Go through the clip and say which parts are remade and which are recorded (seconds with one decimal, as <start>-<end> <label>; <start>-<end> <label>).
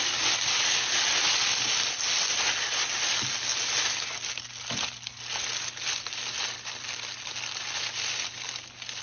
0.0-9.0 recorded